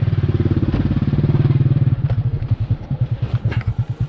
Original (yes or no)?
no